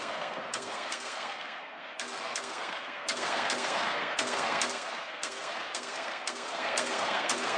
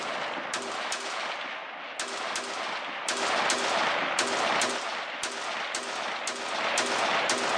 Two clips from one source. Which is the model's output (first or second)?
first